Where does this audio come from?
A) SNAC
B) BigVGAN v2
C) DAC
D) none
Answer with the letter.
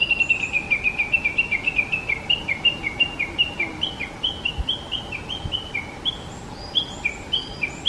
D